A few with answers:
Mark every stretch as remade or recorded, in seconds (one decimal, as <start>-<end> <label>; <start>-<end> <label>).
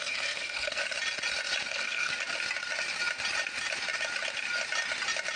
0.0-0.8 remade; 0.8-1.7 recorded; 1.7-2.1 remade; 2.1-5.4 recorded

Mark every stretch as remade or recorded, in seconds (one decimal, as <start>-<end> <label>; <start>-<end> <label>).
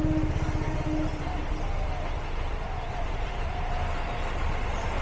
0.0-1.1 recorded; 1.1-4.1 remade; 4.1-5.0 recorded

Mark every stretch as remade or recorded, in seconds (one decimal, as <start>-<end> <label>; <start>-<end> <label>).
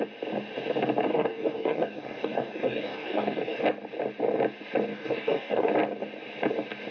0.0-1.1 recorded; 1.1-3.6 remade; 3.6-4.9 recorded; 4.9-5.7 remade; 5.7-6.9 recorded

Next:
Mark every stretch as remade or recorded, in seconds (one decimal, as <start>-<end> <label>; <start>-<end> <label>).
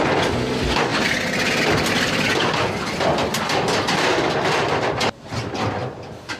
0.0-3.2 recorded; 3.2-4.1 remade; 4.1-6.4 recorded